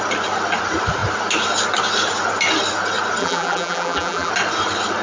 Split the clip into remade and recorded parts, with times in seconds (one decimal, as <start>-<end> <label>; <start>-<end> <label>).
0.0-3.2 recorded; 3.2-4.3 remade; 4.3-5.0 recorded